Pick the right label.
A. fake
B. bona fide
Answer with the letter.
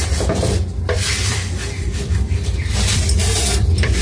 A